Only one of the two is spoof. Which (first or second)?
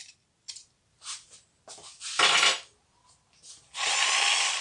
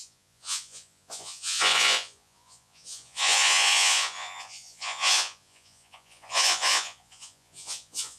second